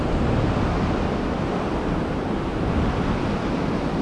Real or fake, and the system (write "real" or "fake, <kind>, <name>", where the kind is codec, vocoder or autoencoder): real